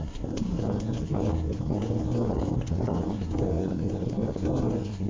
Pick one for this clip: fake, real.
fake